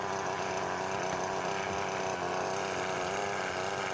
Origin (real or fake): real